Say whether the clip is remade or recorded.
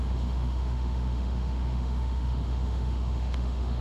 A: remade